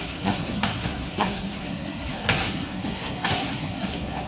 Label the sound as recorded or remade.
remade